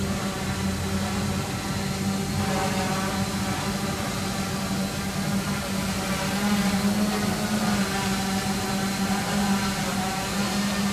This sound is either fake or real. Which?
real